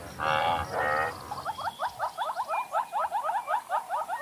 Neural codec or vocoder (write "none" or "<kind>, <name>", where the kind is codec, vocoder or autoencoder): none